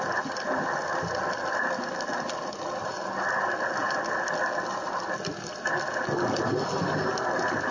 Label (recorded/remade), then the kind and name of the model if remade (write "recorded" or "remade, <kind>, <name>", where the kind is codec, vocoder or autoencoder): recorded